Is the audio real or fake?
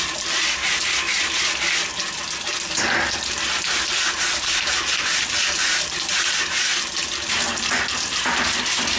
real